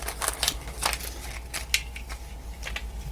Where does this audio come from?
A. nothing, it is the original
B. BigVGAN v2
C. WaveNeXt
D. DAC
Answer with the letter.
A